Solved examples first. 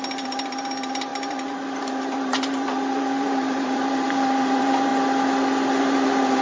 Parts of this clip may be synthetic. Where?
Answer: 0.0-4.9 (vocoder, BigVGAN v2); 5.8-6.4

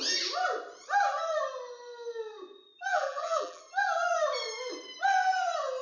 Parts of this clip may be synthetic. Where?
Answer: 2.9-3.6 (vocoder, BigVGAN v2)

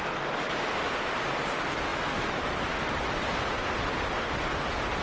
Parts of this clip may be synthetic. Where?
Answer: none

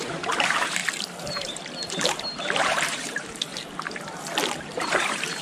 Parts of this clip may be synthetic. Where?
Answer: 0.0-0.8 (vocoder, BigVGAN v2); 1.3-3.5; 4.6-5.4

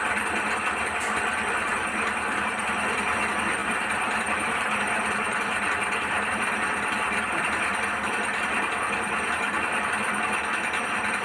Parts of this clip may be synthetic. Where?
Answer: 3.6-8.5 (vocoder, BigVGAN v2)

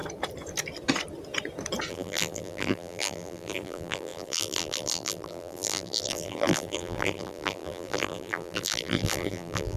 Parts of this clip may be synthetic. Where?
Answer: 1.9-9.8 (vocoder, BigVGAN v2)

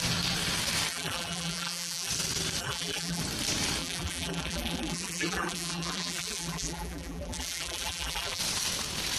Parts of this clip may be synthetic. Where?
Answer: 0.9-2.1 (vocoder, BigVGAN v2); 2.6-3.2; 3.8-8.4

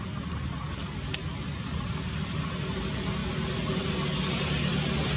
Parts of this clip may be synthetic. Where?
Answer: none